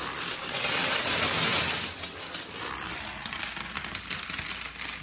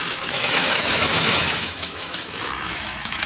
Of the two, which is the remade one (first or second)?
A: second